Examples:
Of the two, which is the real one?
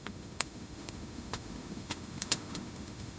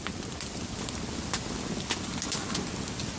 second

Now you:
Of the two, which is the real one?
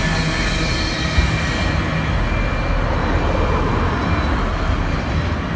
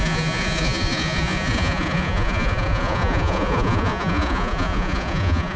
first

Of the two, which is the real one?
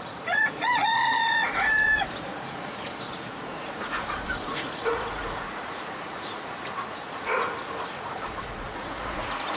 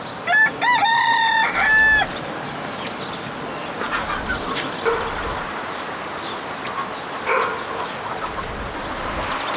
second